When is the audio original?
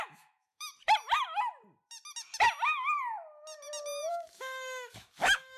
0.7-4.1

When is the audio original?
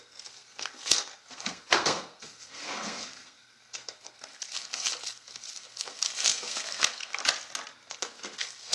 7.2-7.9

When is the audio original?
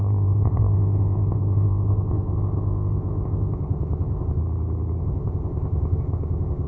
4.4-5.0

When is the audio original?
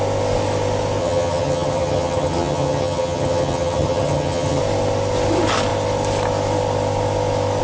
0.0-1.0; 4.6-7.6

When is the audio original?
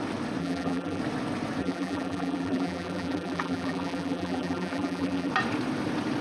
0.0-0.4; 1.0-1.6; 5.3-6.2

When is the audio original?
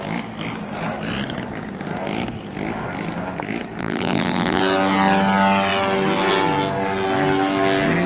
0.0-3.8; 4.6-8.1